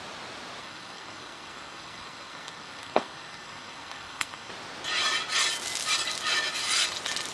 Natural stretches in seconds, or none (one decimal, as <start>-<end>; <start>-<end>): 0.0-0.6; 4.5-7.3